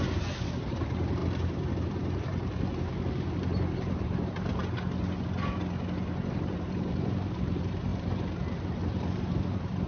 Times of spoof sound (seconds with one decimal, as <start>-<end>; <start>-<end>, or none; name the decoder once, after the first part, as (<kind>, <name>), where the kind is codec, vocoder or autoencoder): 0.0-4.6 (vocoder, BigVGAN v2); 6.3-9.9